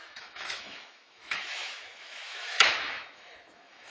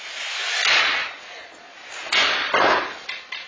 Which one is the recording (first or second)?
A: second